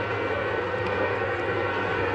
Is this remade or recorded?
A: remade